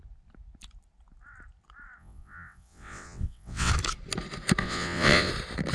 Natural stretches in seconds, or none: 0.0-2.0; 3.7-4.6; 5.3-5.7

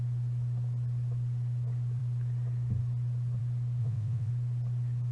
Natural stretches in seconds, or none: 0.0-3.8; 4.3-5.1